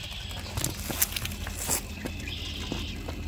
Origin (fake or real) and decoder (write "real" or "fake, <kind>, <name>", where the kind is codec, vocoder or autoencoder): real